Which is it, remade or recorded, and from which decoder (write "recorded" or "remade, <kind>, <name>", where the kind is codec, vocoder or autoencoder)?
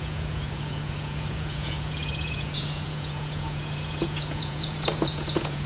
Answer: remade, vocoder, Vocos